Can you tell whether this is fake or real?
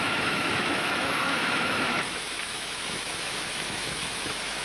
fake